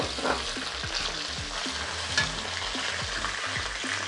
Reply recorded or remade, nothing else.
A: recorded